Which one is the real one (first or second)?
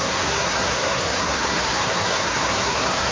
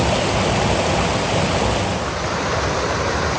second